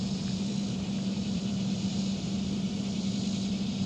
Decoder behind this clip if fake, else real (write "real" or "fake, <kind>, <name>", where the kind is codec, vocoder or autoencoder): fake, vocoder, BigVGAN v2